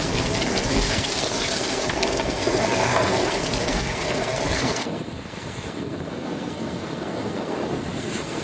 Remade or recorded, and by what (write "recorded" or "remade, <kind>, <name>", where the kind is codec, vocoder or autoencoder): remade, codec, SNAC